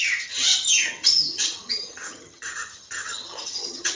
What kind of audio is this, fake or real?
fake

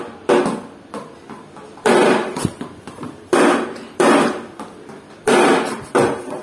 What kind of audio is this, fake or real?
fake